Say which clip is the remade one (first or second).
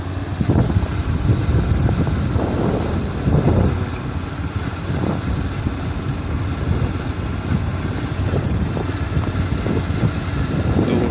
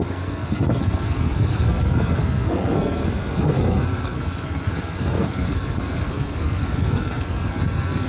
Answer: second